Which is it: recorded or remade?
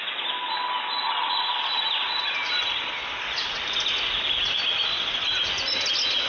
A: recorded